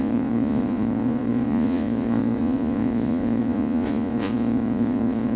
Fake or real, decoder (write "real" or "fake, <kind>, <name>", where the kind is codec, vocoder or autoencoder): fake, vocoder, Vocos